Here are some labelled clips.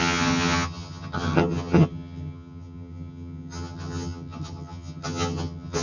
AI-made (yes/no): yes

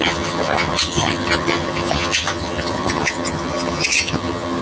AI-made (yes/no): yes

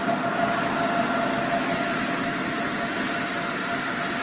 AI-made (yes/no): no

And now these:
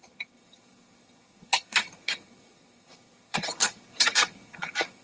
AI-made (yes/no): yes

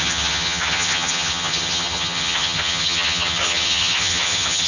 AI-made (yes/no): yes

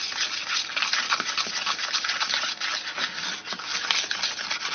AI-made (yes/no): no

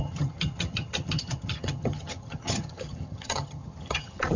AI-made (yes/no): yes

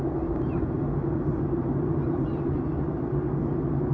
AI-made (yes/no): no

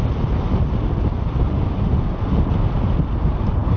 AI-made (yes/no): no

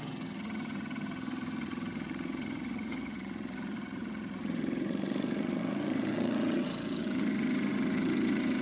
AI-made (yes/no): yes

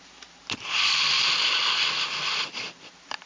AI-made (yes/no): no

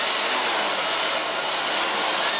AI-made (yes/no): no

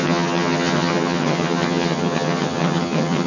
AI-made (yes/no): yes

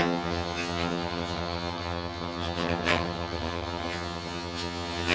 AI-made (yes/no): yes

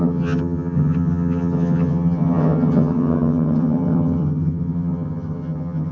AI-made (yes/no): yes